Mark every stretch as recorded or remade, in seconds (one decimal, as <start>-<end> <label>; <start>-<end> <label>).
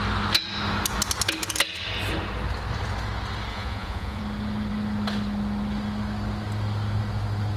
0.0-3.5 recorded; 3.5-4.2 remade; 4.2-7.6 recorded